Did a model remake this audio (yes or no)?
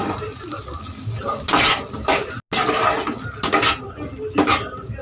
no